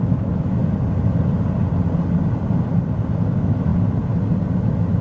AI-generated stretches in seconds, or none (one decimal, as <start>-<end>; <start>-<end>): 0.0-0.6; 3.3-3.7; 4.5-5.0